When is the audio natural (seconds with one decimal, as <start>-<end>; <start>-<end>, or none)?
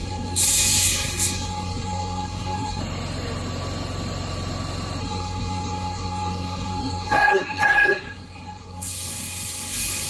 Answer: 2.8-5.0